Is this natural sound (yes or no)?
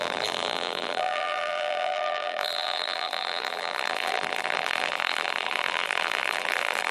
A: no